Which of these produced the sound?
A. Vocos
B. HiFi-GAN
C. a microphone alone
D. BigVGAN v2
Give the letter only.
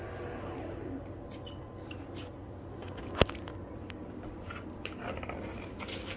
C